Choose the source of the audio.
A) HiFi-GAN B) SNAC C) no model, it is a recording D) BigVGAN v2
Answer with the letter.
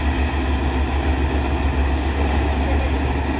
C